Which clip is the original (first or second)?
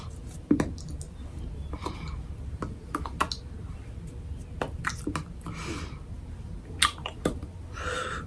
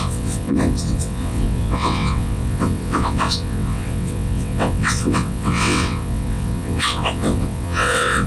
first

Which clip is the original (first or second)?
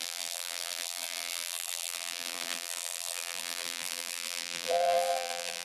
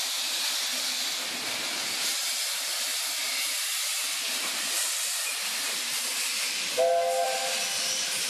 second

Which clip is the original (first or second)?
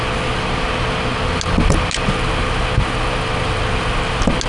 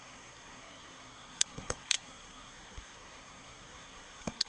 first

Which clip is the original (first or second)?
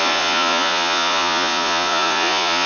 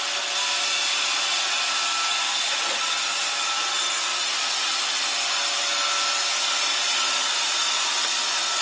second